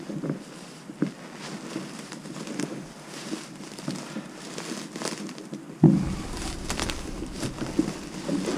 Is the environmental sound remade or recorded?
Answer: recorded